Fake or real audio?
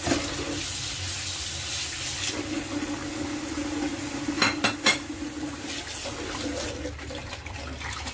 real